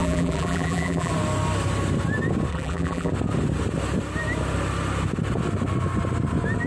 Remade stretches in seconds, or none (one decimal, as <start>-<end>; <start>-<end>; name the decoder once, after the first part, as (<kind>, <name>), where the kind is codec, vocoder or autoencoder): 0.0-1.1 (vocoder, BigVGAN v2); 2.5-3.1